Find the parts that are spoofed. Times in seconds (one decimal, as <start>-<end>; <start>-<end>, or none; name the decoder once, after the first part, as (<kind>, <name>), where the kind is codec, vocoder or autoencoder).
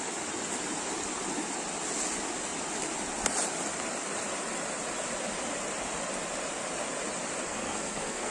7.5-8.3 (codec, SNAC)